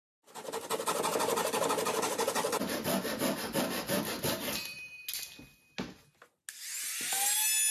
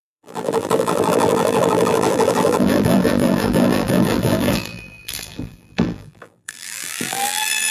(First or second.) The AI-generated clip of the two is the second